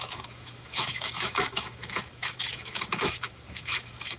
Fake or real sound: fake